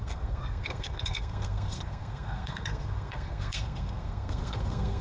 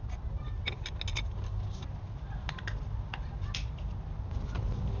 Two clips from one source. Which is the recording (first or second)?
second